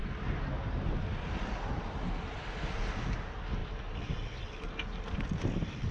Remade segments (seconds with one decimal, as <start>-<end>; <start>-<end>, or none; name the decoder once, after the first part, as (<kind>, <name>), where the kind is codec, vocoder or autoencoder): none